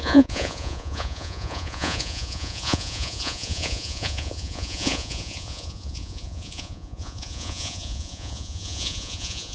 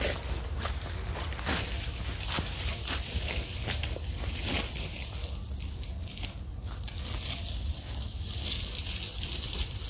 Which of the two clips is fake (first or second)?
first